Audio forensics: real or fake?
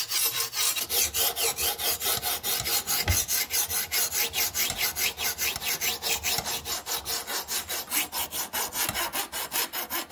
real